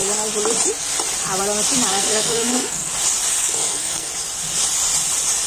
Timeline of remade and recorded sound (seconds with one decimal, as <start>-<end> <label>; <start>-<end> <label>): 0.0-1.9 recorded; 1.9-2.9 remade; 2.9-3.4 recorded; 3.4-4.1 remade; 4.1-5.5 recorded